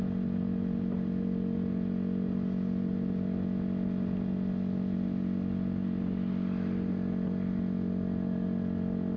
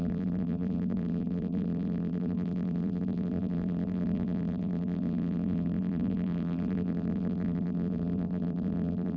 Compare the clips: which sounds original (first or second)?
first